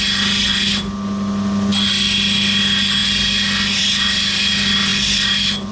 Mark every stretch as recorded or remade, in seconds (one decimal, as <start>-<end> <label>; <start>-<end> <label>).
0.0-5.7 recorded